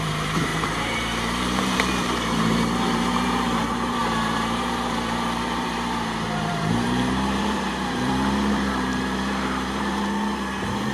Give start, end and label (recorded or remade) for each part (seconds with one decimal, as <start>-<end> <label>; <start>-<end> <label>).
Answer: 0.0-10.9 remade